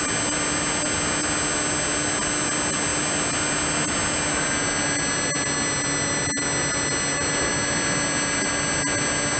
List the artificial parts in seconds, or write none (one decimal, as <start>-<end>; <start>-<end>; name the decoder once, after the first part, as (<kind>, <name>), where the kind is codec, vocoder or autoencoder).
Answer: none